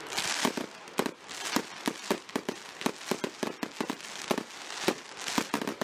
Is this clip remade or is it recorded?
recorded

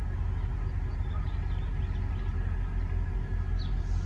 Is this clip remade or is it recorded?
recorded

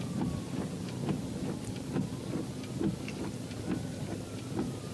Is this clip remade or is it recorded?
recorded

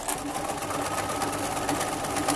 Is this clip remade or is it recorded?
recorded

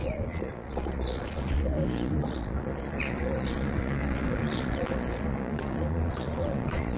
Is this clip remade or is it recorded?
remade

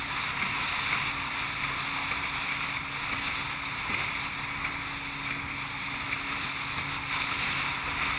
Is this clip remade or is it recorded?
recorded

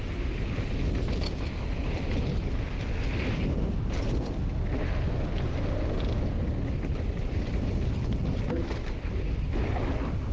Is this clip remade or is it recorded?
recorded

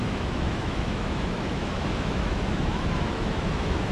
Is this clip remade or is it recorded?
remade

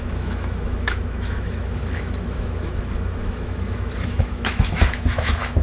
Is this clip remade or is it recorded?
remade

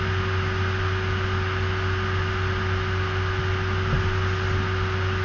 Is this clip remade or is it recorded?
recorded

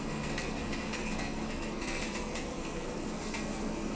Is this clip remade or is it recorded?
remade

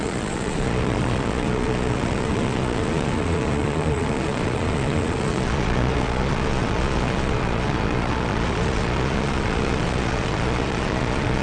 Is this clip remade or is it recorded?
remade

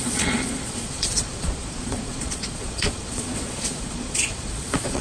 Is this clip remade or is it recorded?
remade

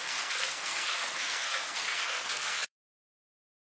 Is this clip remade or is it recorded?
remade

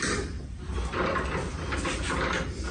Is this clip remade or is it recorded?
recorded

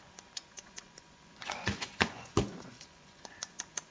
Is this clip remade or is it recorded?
remade